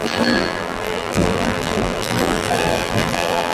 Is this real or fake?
fake